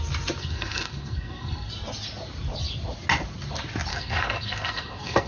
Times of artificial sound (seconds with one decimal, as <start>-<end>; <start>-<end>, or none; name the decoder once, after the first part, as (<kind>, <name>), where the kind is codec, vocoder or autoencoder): 0.4-1.7 (codec, SNAC); 3.9-5.3